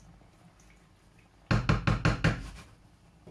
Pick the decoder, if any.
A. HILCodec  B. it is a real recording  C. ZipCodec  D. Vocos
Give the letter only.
B